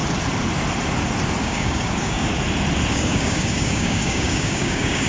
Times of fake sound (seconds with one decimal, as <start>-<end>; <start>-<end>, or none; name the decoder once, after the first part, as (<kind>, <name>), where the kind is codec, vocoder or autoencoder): 1.4-2.3 (codec, DAC); 2.9-5.1